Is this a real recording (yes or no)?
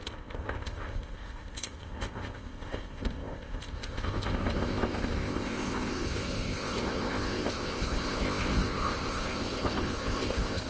no